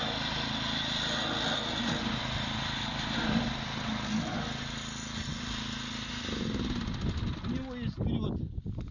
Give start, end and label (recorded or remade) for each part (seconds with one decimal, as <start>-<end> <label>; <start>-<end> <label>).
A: 0.0-8.9 recorded